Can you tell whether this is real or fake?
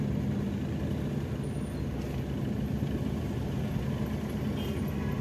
real